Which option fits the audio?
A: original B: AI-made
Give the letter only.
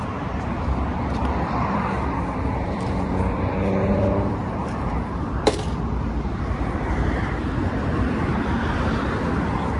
B